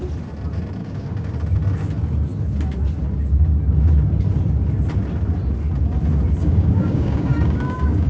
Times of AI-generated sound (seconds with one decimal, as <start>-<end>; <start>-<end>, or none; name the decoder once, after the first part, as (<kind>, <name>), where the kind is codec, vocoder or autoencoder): 0.8-1.3 (codec, DAC); 6.4-8.1